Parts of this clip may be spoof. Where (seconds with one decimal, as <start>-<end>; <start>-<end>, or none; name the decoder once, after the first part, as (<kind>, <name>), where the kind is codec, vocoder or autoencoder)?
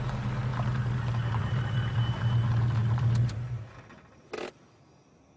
0.5-2.0 (vocoder, BigVGAN v2)